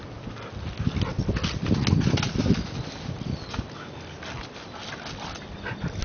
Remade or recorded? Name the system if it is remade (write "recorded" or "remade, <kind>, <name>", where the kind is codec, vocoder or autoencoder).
recorded